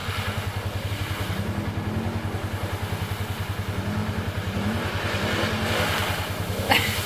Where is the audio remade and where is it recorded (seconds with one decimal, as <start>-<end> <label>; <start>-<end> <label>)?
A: 0.0-4.0 recorded; 4.0-5.7 remade; 5.7-7.1 recorded